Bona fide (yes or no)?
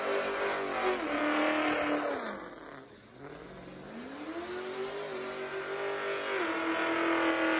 yes